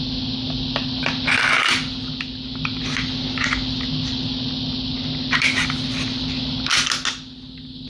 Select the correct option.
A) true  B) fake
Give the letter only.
A